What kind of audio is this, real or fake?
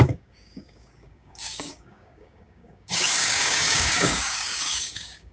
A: fake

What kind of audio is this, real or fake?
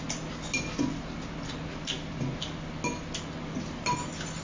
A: real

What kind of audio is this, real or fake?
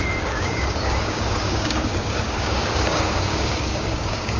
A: fake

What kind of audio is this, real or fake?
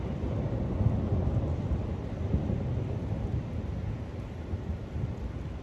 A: real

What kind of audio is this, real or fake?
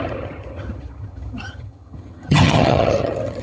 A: fake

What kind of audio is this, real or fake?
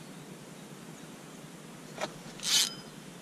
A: real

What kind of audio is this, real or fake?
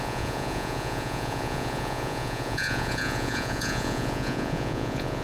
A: fake